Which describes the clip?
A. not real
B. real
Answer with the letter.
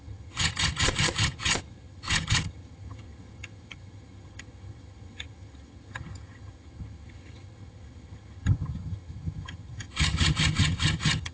A